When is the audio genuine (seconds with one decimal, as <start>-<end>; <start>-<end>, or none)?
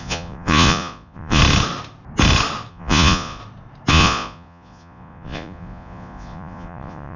1.4-2.7; 3.4-3.9